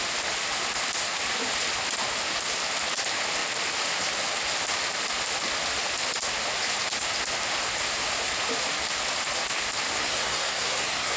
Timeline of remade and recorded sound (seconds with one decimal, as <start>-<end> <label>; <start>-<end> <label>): 0.0-10.0 recorded; 10.0-11.2 remade